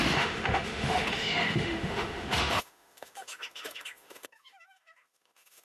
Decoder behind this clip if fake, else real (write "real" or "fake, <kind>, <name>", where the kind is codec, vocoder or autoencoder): fake, autoencoder, DAC-VAE